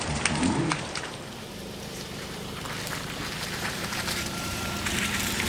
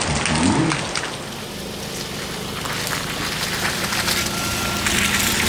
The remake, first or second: first